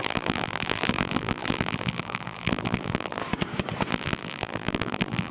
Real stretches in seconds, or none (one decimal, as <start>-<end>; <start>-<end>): 3.2-3.9